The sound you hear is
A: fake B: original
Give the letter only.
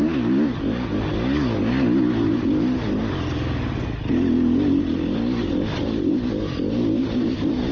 B